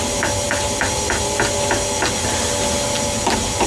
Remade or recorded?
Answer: recorded